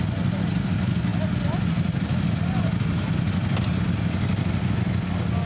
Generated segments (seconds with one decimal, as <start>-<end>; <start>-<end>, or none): none

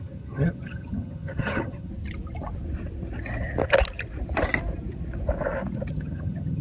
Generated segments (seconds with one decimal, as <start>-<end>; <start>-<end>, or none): 0.0-1.9; 5.9-6.6